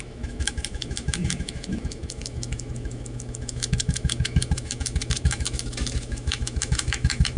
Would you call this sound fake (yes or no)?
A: yes